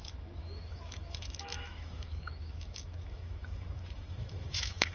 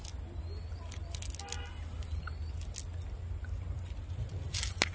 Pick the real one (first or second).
second